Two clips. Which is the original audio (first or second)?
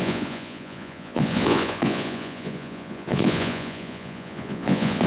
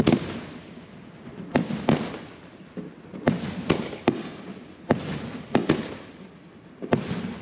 second